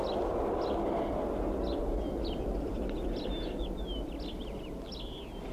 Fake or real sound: real